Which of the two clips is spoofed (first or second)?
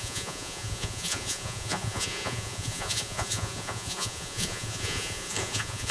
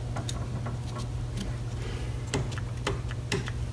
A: first